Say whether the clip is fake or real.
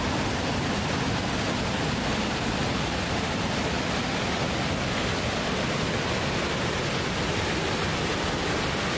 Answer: real